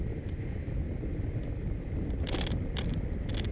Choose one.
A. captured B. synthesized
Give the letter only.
A